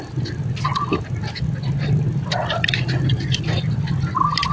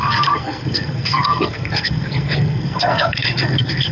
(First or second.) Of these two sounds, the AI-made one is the second